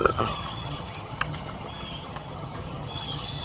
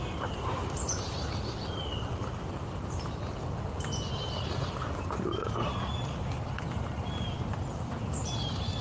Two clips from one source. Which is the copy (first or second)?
first